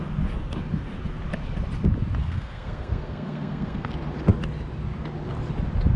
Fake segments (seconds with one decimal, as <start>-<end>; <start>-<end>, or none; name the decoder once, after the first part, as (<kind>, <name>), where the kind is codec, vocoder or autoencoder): 2.2-3.9 (codec, SNAC)

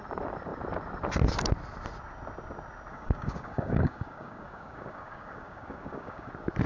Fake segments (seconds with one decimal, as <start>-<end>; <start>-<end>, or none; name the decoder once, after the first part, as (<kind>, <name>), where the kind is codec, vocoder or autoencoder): 2.9-6.3 (codec, DAC)

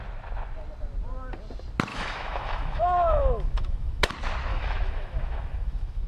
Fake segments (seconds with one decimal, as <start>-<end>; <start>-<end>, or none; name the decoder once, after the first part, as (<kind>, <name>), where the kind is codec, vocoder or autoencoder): 1.9-4.1 (autoencoder, DAC-VAE); 4.5-6.1

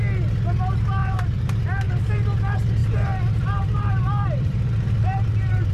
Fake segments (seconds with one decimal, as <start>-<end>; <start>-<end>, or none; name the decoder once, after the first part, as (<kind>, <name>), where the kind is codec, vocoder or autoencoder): 1.0-2.1 (vocoder, BigVGAN v2); 2.8-5.7

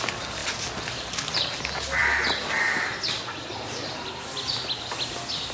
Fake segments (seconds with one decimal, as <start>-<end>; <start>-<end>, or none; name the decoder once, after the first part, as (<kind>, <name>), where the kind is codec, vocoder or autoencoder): none

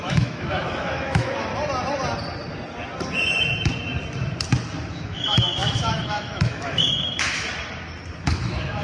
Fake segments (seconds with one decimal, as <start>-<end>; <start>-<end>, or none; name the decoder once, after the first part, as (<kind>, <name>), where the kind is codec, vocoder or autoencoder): 0.0-1.5 (autoencoder, DAC-VAE); 4.9-7.5; 8.2-8.8